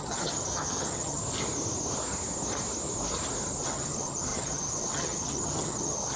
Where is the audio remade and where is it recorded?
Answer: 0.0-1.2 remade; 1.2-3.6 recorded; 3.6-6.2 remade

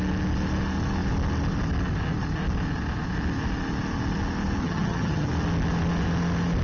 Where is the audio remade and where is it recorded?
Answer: 0.0-4.6 recorded; 4.6-5.3 remade; 5.3-6.6 recorded